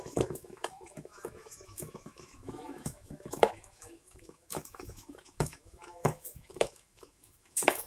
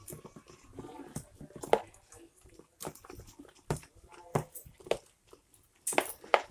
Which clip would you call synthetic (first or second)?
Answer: first